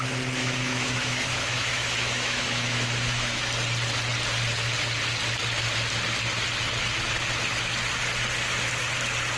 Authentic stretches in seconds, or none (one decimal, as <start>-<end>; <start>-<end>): 0.0-0.4; 3.4-9.4